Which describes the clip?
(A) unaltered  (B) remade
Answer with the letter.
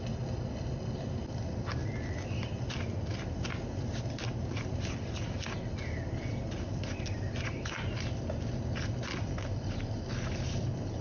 A